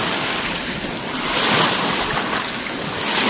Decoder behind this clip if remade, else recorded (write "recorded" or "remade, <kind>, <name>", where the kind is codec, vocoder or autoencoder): recorded